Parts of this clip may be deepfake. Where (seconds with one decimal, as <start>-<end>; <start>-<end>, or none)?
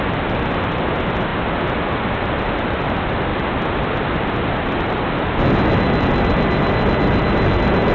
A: none